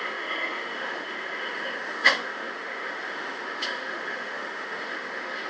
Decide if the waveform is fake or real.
fake